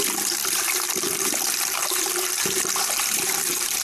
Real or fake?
fake